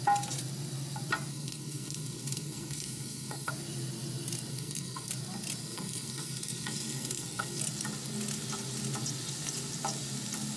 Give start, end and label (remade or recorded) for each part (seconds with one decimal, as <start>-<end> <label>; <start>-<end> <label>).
0.0-1.3 recorded; 1.3-3.5 remade; 3.5-4.5 recorded; 4.5-5.1 remade; 5.1-5.6 recorded; 5.6-7.6 remade; 7.6-10.6 recorded